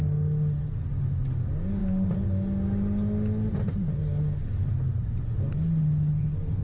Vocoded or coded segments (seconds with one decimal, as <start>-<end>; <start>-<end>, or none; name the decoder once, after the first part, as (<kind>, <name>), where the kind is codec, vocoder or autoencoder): none

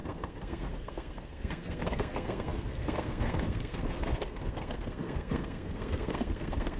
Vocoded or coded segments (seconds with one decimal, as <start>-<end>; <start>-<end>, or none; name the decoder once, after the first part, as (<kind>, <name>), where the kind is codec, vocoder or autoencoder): 0.0-6.8 (codec, SNAC)

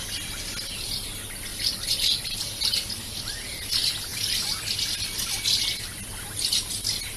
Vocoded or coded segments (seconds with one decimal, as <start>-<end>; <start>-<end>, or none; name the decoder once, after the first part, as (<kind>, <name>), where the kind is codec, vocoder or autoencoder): none

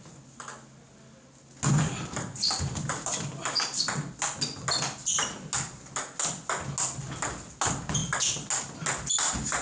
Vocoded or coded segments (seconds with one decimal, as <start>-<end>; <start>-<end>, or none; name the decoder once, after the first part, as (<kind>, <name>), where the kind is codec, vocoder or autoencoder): none

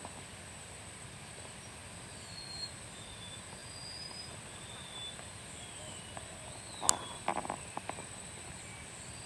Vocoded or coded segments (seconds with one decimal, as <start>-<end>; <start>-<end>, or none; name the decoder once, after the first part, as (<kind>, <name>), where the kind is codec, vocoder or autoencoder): none